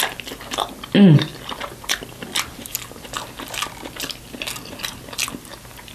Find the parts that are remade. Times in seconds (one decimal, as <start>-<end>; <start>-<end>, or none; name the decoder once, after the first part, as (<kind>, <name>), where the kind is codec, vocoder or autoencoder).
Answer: none